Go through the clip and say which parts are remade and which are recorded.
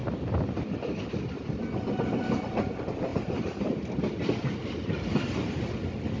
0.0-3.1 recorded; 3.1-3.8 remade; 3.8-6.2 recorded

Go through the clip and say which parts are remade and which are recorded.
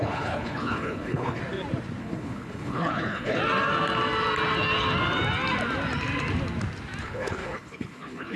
0.0-1.4 remade; 1.4-2.0 recorded; 2.0-3.4 remade; 3.4-7.0 recorded; 7.0-8.4 remade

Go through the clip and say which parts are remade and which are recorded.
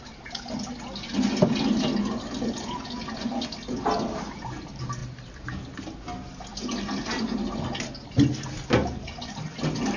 0.0-10.0 recorded